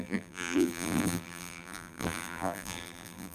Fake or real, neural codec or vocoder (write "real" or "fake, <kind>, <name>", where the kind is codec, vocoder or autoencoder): fake, vocoder, BigVGAN v2